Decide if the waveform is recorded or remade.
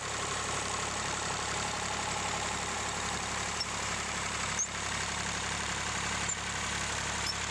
remade